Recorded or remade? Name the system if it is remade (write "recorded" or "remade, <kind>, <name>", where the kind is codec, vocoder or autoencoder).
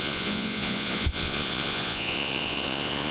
remade, vocoder, Vocos